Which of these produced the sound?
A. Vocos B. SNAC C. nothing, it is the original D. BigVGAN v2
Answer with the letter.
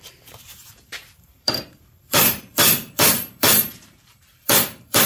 D